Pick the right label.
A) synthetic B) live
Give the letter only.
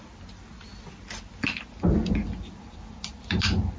B